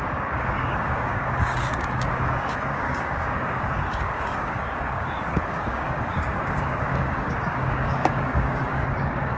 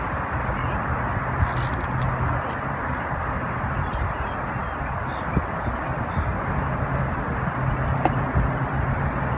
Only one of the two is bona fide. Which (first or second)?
second